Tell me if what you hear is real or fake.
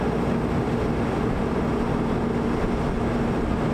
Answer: real